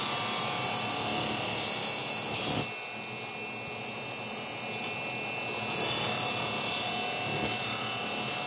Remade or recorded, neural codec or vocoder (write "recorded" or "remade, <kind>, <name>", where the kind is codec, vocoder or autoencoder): recorded